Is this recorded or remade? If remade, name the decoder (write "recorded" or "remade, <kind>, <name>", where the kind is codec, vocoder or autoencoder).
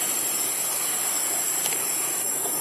recorded